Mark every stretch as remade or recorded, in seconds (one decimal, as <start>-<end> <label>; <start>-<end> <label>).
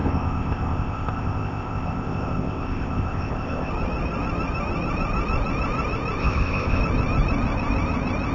0.0-3.7 remade; 3.7-6.2 recorded; 6.2-6.8 remade; 6.8-8.3 recorded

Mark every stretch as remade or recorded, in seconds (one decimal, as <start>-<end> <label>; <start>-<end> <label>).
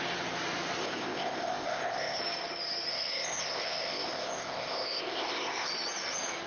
0.0-0.8 recorded; 0.8-2.2 remade; 2.2-2.9 recorded; 2.9-5.7 remade; 5.7-6.5 recorded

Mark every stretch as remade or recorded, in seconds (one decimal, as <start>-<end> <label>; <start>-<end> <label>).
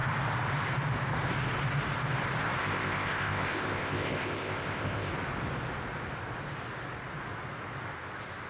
0.0-2.6 recorded; 2.6-5.1 remade; 5.1-8.5 recorded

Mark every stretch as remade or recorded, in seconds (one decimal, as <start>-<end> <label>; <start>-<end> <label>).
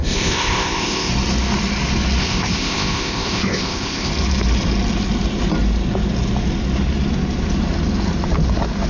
0.0-1.1 remade; 1.1-2.2 recorded; 2.2-4.1 remade; 4.1-8.9 recorded